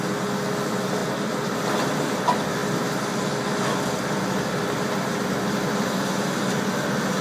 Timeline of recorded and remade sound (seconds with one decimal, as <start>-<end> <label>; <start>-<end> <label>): 0.0-7.2 recorded